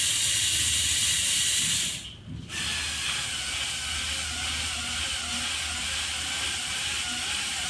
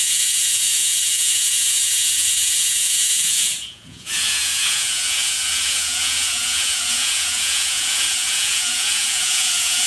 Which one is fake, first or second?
second